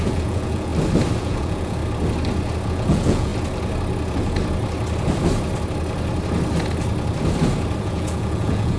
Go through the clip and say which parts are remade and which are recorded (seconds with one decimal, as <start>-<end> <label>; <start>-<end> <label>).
0.0-0.7 remade; 0.7-1.2 recorded; 1.2-1.8 remade; 1.8-2.7 recorded; 2.7-3.3 remade; 3.3-7.8 recorded; 7.8-8.8 remade